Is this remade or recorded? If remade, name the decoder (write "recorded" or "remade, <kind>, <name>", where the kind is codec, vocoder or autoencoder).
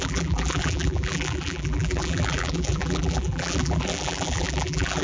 remade, vocoder, BigVGAN v2